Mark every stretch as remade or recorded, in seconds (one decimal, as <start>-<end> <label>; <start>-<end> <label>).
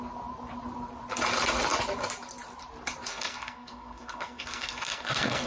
0.0-3.1 recorded; 3.1-5.5 remade